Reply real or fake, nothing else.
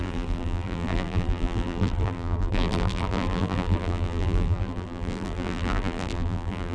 fake